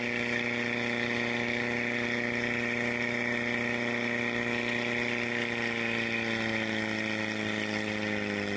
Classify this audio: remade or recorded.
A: recorded